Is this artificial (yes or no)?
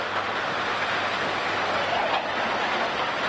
no